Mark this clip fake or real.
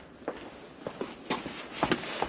real